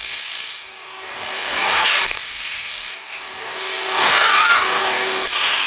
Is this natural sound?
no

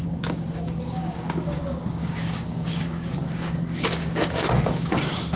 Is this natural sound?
no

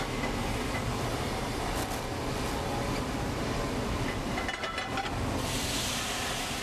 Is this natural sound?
yes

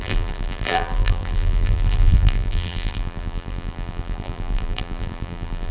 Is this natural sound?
no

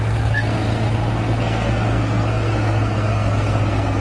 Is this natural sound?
no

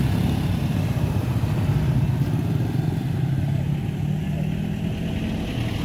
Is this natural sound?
yes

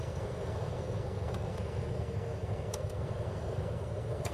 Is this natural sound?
no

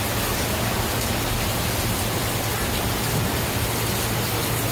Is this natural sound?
yes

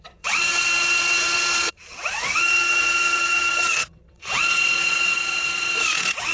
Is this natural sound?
no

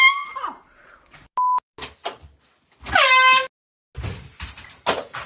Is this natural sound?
yes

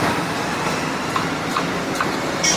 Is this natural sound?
no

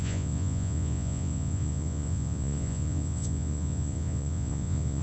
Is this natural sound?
no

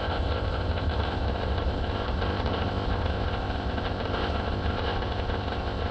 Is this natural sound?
no